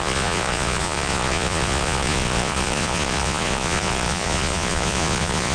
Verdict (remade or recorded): remade